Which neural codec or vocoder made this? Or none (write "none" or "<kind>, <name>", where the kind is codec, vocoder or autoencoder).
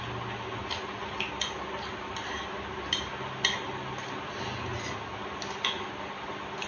none